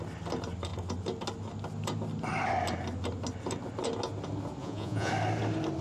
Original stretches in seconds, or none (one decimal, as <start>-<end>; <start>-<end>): 0.0-4.6; 5.1-5.8